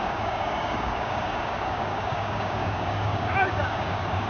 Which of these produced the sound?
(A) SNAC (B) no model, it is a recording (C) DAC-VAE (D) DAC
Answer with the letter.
D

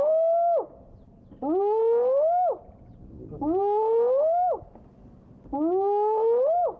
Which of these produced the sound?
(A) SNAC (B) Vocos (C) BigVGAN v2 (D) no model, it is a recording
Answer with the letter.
D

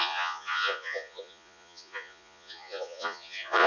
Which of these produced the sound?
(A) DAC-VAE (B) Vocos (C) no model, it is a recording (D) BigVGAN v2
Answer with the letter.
B